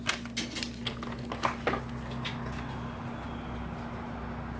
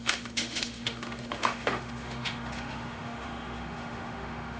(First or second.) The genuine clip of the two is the first